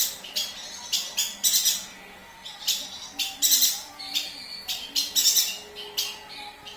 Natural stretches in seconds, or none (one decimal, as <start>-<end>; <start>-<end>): 0.0-6.8